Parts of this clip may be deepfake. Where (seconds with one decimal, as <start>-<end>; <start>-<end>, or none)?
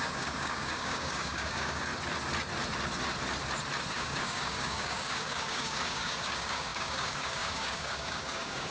0.0-1.9; 3.9-8.7